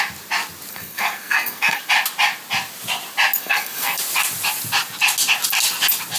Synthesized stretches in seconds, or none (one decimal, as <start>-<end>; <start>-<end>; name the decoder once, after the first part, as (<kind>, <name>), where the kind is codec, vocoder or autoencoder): 0.7-1.8 (codec, SNAC); 3.4-4.0